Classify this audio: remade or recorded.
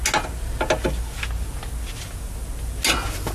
recorded